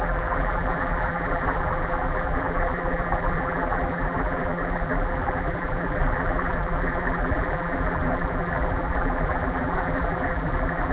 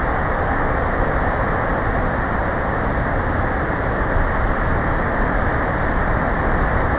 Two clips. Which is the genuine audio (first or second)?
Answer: second